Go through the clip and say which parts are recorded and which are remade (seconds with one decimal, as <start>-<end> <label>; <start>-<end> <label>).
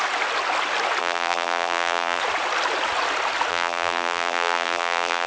0.0-1.0 recorded; 1.0-2.2 remade; 2.2-3.5 recorded; 3.5-5.3 remade